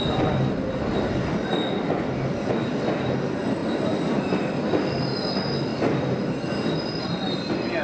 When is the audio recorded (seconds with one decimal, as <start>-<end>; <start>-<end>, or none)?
0.0-7.8